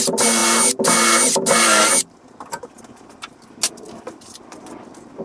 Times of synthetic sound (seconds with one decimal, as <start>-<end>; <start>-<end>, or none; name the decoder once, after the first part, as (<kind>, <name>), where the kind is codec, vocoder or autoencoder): none

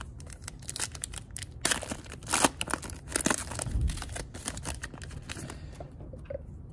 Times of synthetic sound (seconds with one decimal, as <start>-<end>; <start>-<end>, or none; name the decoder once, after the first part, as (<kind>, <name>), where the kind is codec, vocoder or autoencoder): none

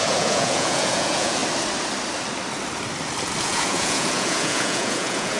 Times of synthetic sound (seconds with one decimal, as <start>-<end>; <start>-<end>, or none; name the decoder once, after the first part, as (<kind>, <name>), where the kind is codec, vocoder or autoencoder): 0.0-1.4 (vocoder, Vocos); 3.4-5.4

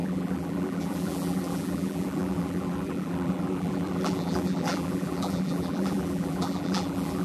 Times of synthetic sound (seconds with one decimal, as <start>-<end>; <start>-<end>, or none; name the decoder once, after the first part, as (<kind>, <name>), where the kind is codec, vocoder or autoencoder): 0.0-7.2 (vocoder, BigVGAN v2)

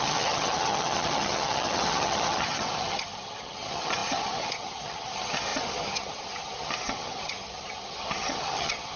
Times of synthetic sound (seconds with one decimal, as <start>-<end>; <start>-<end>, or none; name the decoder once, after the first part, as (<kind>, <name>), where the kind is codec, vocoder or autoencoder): 0.0-9.0 (vocoder, HiFi-GAN)

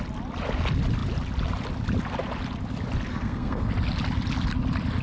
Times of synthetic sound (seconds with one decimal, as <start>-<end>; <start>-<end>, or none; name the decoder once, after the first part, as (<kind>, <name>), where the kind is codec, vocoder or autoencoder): 3.1-3.7 (codec, SNAC)

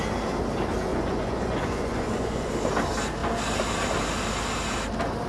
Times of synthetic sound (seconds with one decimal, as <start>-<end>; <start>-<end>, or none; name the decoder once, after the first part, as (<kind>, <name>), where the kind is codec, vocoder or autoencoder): 0.9-2.5 (vocoder, Vocos)

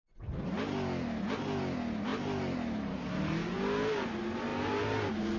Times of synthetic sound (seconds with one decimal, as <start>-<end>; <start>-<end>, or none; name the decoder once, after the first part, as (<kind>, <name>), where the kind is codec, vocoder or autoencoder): none